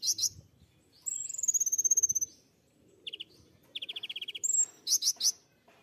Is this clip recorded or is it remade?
recorded